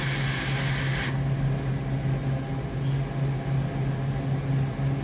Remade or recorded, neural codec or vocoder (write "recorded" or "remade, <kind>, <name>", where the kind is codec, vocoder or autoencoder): recorded